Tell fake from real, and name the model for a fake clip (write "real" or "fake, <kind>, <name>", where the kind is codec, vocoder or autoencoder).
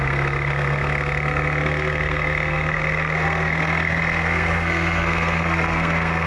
fake, codec, SNAC